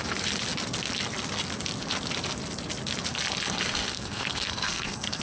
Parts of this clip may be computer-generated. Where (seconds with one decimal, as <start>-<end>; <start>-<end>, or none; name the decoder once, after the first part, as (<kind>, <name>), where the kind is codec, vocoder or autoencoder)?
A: 3.9-5.2 (codec, SNAC)